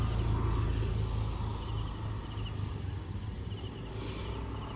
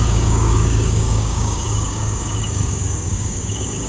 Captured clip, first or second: first